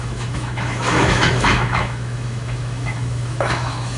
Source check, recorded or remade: remade